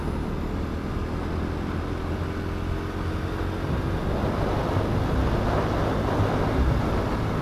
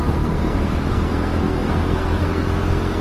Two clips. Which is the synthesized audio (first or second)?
second